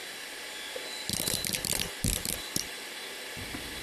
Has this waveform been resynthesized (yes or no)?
yes